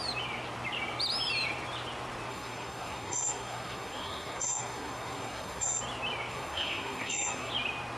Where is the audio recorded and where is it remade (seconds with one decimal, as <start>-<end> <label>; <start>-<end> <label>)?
0.0-2.3 recorded; 2.3-5.8 remade; 5.8-6.3 recorded; 6.3-7.5 remade; 7.5-8.0 recorded